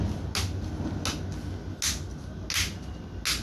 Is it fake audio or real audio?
real